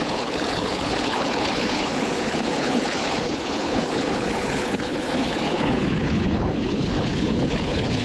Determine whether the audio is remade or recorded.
remade